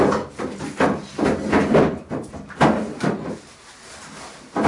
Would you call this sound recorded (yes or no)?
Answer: yes